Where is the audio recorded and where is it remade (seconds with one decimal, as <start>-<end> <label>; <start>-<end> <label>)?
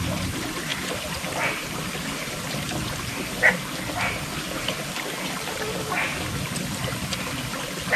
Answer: 0.0-5.7 recorded; 5.7-6.3 remade; 6.3-8.0 recorded